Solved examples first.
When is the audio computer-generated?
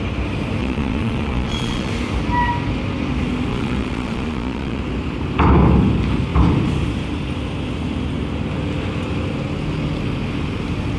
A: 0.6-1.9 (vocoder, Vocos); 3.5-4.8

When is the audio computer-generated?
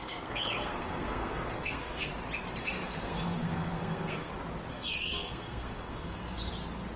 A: 0.0-2.1 (codec, SNAC); 2.6-4.3; 4.7-6.5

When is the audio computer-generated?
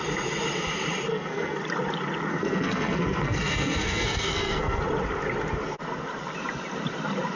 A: 1.1-1.6 (codec, SNAC); 2.3-4.8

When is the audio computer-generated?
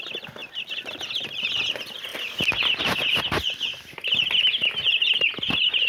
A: 0.4-1.0 (vocoder, BigVGAN v2)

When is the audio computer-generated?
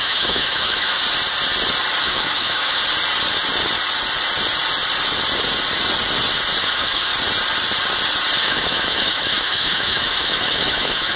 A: 0.0-1.0 (autoencoder, DAC-VAE); 2.0-2.8; 6.6-7.1; 8.4-11.2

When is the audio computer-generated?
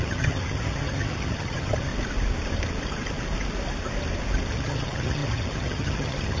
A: 0.0-1.9 (vocoder, HiFi-GAN); 4.5-6.4